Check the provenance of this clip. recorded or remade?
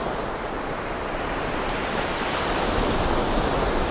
recorded